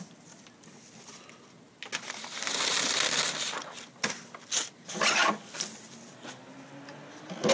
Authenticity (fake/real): real